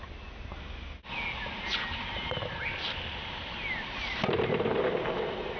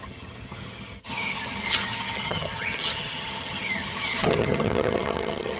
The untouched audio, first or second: first